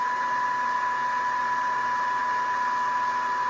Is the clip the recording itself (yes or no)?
yes